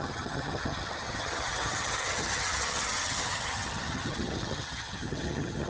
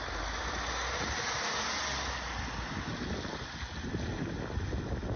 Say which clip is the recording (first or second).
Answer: second